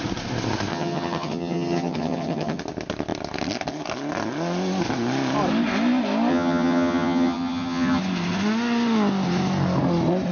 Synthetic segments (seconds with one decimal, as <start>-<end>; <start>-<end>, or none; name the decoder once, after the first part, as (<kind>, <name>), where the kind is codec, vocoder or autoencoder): 0.7-2.6 (vocoder, HiFi-GAN); 6.3-8.0